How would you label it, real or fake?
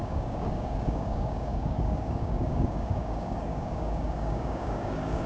fake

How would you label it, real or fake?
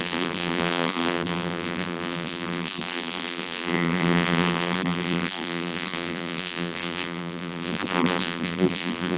fake